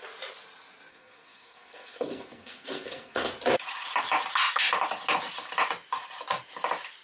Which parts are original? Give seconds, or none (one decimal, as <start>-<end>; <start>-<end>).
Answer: 0.0-0.9; 3.3-7.0